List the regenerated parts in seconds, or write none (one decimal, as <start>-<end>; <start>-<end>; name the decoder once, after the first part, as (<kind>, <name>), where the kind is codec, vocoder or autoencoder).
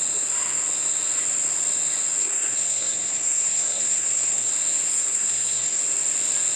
2.2-4.5 (codec, SNAC); 4.9-5.8